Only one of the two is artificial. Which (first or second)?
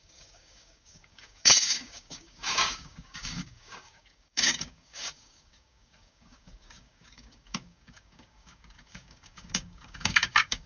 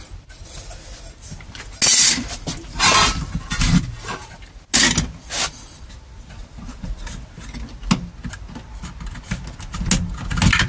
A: first